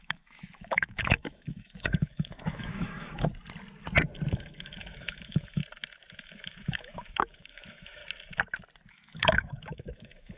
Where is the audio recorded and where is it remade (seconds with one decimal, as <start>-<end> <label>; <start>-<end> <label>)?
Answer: 0.0-3.3 remade; 3.3-4.3 recorded; 4.3-5.6 remade; 5.6-6.2 recorded; 6.2-8.0 remade; 8.0-8.9 recorded; 8.9-10.4 remade